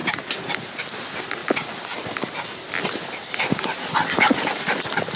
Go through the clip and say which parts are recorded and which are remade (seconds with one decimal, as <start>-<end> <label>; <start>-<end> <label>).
0.0-5.2 recorded